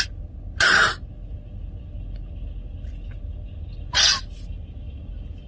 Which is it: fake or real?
real